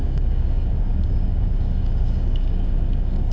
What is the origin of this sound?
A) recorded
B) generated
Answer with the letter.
B